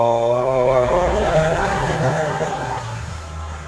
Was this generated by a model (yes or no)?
yes